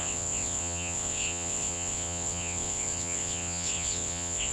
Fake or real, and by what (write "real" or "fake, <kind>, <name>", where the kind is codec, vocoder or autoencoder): fake, vocoder, WaveNeXt